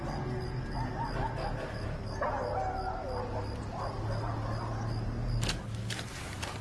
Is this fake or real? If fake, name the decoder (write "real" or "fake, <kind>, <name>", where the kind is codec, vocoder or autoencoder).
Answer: real